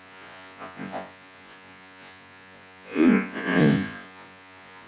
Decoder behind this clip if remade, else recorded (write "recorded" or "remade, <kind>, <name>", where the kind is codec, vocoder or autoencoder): remade, vocoder, Vocos